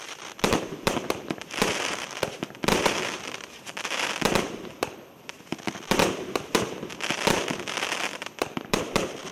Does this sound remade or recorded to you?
remade